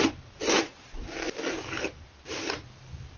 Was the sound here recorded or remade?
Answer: recorded